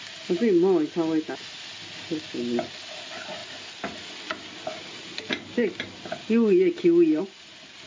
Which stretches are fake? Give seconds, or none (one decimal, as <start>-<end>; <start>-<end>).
none